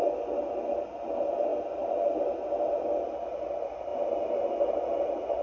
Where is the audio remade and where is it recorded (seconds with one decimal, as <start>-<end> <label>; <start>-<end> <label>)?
0.0-5.4 recorded